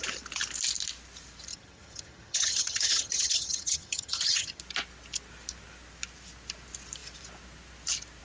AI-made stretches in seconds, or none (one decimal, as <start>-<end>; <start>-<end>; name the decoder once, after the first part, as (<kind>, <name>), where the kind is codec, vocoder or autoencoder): 1.5-4.6 (vocoder, HiFi-GAN)